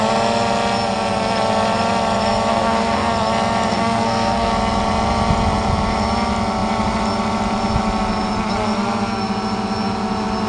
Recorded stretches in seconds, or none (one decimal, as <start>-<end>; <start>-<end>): 0.0-2.5; 3.1-3.7; 4.5-10.5